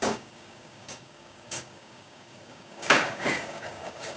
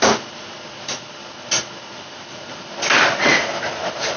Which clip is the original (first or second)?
second